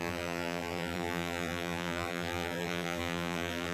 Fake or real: fake